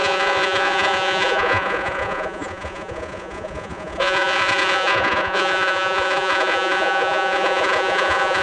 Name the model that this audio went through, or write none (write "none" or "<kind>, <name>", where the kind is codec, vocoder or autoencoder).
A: vocoder, Vocos